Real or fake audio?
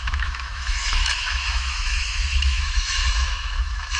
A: fake